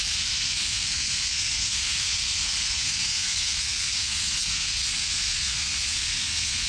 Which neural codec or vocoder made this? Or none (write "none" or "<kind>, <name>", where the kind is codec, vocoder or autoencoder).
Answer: codec, SNAC